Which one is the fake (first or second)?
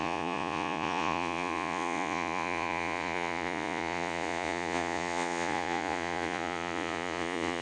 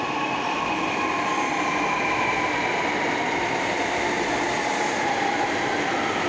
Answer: first